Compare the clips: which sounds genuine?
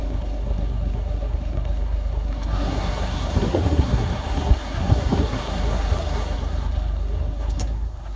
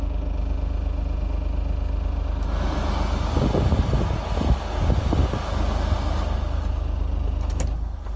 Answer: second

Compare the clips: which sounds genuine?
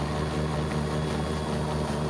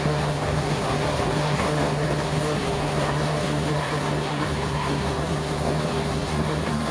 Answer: first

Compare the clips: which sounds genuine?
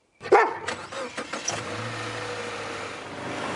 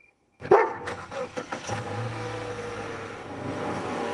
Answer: first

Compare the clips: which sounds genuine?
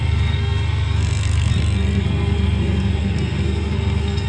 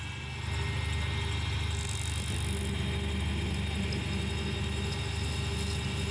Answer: second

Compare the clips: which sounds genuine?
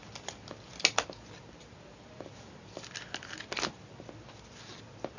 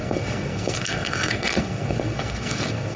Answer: first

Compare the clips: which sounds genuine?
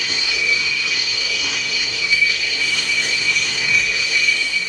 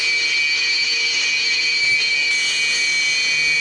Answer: second